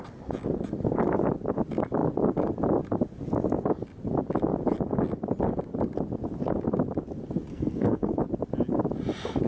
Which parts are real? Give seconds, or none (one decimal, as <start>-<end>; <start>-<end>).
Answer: 0.0-7.5; 8.2-9.5